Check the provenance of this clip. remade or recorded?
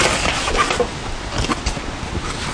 recorded